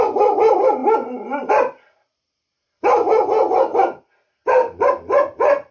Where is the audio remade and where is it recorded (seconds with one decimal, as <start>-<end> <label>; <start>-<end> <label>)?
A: 0.0-0.8 recorded; 0.8-1.5 remade; 1.5-5.7 recorded